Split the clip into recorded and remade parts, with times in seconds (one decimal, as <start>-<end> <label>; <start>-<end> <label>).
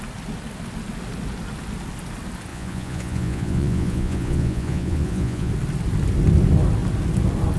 0.0-2.5 recorded; 2.5-5.5 remade; 5.5-7.6 recorded